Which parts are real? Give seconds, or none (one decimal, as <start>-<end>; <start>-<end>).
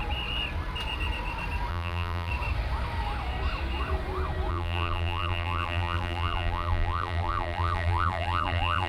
0.0-1.7; 2.3-4.5